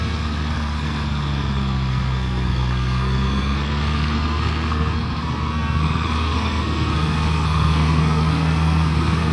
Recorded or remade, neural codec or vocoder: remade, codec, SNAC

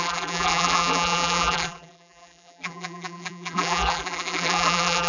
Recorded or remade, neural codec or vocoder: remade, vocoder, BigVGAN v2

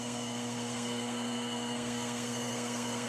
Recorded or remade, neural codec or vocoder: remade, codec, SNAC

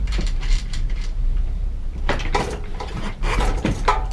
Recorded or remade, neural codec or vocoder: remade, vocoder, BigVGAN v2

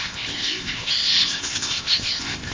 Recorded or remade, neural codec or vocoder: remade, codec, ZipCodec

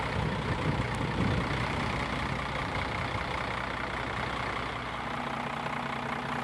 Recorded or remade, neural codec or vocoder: recorded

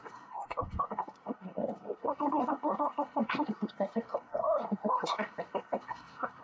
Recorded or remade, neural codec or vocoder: remade, codec, SNAC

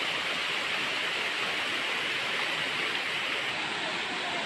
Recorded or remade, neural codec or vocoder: recorded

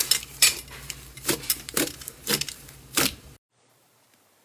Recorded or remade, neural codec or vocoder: remade, vocoder, BigVGAN v2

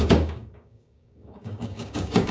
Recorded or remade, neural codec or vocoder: remade, codec, DAC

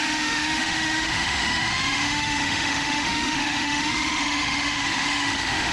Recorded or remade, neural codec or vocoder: remade, autoencoder, DAC-VAE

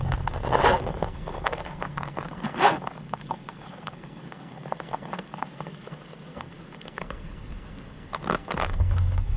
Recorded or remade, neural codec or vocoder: remade, codec, SNAC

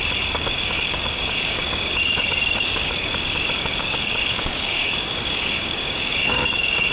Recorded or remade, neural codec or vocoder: remade, codec, DAC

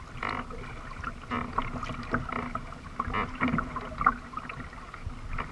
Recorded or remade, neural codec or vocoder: recorded